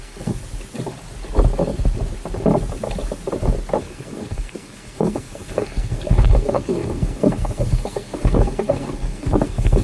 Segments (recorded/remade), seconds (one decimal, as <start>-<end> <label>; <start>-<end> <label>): 0.0-0.4 remade; 0.4-3.8 recorded; 3.8-9.8 remade